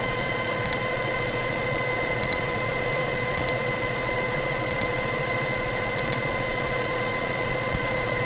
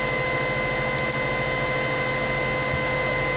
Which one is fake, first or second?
first